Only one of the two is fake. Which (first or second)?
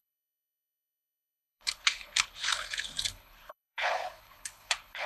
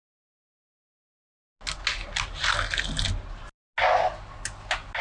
first